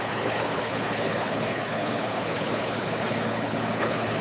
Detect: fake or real fake